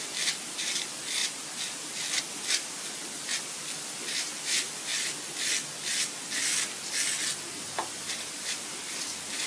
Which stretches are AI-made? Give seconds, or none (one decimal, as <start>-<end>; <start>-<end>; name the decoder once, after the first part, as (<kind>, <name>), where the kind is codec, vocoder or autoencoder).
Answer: 0.0-4.9 (vocoder, BigVGAN v2); 7.5-9.5